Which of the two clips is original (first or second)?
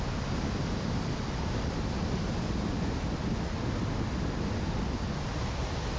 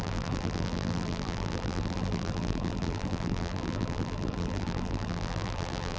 first